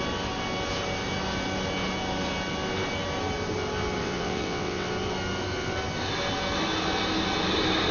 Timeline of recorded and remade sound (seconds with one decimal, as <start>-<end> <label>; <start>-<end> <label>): 0.0-4.0 recorded; 4.0-4.9 remade; 4.9-7.9 recorded